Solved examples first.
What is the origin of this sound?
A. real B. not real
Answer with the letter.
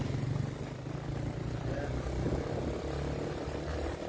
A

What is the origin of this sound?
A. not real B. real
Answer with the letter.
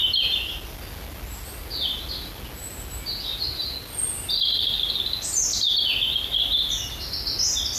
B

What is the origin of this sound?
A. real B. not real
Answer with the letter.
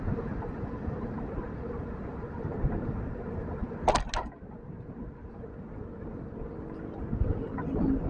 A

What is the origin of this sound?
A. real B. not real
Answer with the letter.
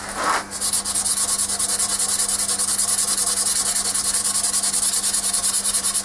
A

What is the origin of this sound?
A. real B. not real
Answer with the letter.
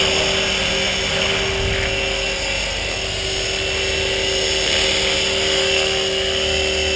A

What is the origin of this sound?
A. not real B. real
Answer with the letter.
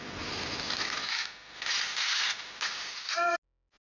B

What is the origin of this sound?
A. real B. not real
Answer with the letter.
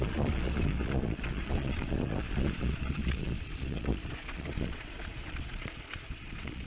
B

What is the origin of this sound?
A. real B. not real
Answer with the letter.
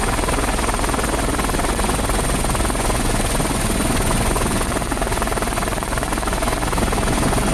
B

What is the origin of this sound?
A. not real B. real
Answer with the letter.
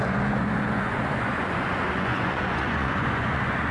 A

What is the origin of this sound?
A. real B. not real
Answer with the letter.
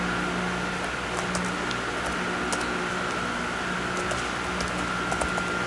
A